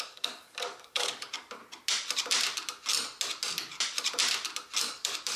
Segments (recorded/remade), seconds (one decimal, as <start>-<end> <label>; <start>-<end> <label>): 0.0-1.6 remade; 1.6-4.8 recorded; 4.8-5.4 remade